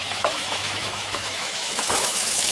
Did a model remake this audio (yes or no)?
yes